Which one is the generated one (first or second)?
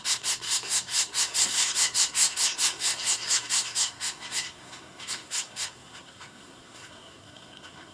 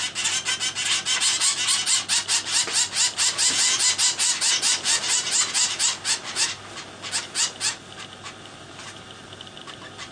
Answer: first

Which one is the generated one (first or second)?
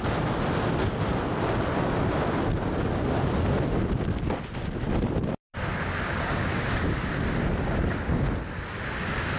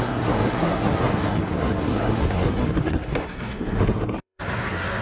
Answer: second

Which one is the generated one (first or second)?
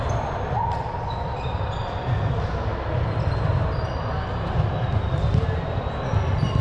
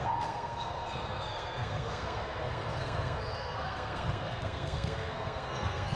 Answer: second